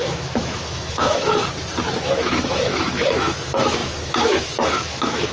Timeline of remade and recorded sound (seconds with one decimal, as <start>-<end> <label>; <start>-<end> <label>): 0.0-1.4 remade; 1.4-2.0 recorded; 2.0-5.3 remade